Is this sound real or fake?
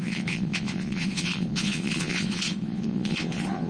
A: fake